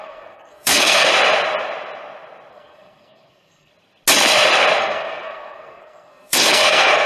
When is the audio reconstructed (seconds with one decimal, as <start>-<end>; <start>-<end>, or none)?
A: 0.0-1.1; 2.5-3.7; 4.8-7.1